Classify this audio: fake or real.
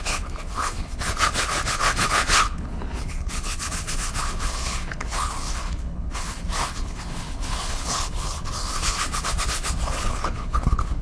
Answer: fake